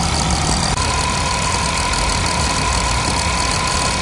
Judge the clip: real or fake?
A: real